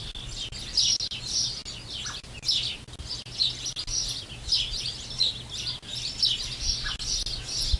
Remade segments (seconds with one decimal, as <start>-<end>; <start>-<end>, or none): none